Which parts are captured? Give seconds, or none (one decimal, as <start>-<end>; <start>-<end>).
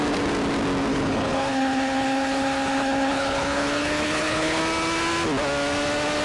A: 0.0-0.9; 4.6-6.2